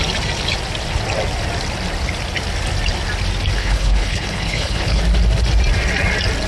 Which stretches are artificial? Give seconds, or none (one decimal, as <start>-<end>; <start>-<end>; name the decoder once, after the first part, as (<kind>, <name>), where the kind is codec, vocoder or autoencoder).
3.6-5.0 (codec, HILCodec)